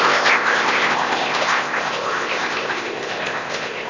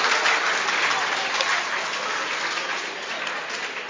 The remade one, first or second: first